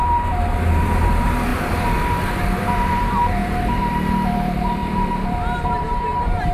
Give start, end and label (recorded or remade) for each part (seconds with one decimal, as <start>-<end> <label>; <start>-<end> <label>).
0.0-6.5 remade